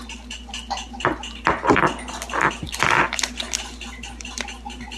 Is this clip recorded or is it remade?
recorded